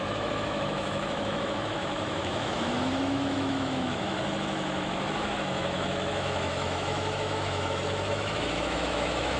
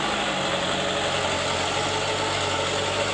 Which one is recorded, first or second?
second